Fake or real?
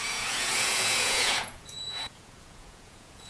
fake